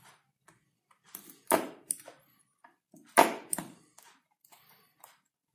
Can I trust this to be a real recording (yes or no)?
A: no